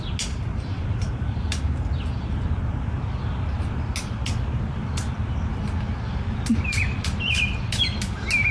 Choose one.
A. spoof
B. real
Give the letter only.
B